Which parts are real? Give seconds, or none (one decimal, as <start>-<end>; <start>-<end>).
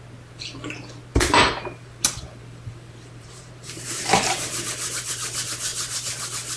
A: 0.0-1.1; 5.1-6.6